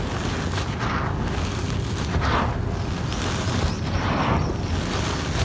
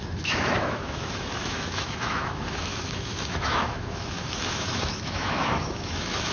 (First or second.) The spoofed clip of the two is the second